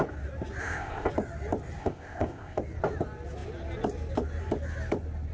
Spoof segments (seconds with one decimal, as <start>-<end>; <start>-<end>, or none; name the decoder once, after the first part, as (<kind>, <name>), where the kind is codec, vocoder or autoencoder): 0.6-1.1 (codec, ZipCodec); 1.8-2.6